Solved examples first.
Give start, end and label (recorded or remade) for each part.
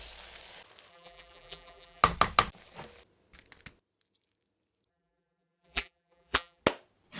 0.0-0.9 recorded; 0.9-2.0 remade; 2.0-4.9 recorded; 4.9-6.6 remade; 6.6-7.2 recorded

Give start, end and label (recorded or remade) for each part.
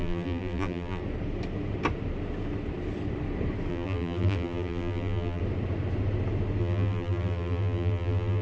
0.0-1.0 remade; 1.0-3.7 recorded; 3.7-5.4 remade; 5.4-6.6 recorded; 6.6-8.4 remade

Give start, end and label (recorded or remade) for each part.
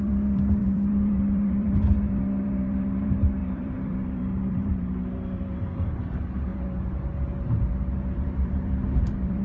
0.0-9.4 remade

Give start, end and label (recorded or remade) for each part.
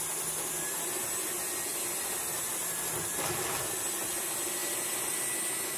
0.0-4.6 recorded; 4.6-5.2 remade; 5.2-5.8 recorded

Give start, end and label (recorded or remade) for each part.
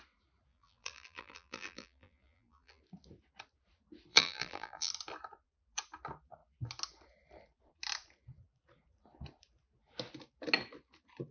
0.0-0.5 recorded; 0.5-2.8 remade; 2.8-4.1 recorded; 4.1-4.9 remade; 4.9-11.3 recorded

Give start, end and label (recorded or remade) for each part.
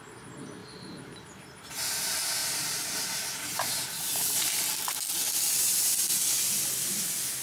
0.0-0.6 recorded; 0.6-1.7 remade; 1.7-2.4 recorded; 2.4-2.9 remade; 2.9-7.4 recorded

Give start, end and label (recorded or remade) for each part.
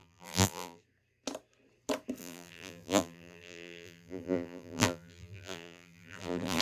0.0-0.8 remade; 0.8-2.2 recorded; 2.2-6.6 remade